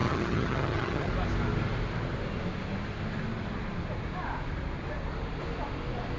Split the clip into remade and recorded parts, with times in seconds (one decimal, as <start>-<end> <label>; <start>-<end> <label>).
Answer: 0.0-1.1 remade; 1.1-6.2 recorded